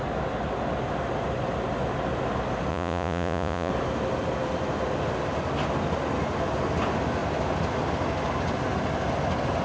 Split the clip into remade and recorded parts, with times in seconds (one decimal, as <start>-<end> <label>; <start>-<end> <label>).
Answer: 0.0-2.7 recorded; 2.7-3.7 remade; 3.7-9.6 recorded